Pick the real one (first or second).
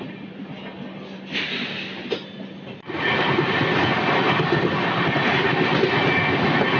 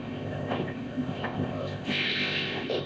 first